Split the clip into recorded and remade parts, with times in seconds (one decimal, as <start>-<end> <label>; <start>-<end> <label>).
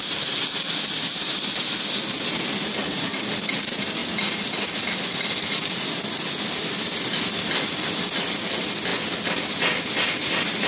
0.0-10.7 recorded